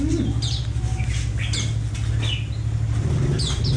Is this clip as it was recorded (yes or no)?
yes